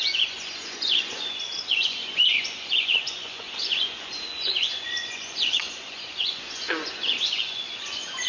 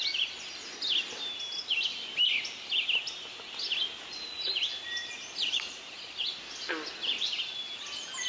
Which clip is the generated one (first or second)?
first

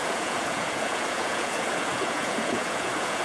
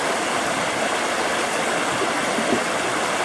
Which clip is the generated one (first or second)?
first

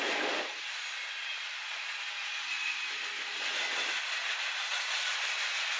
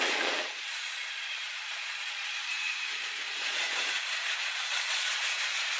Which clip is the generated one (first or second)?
second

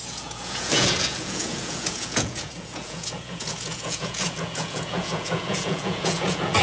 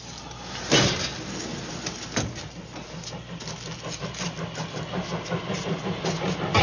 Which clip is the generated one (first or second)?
first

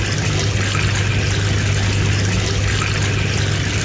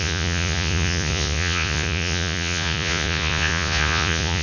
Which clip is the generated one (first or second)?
second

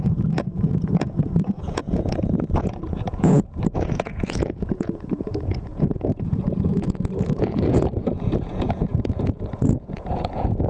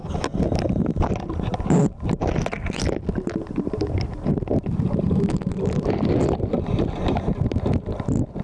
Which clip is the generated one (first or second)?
first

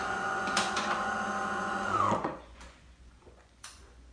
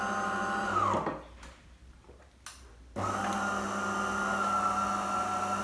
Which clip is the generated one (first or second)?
first